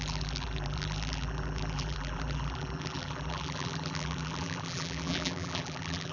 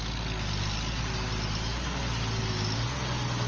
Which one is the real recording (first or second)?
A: second